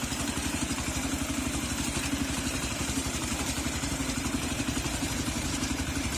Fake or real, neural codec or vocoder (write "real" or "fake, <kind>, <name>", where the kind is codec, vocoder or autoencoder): fake, vocoder, BigVGAN v2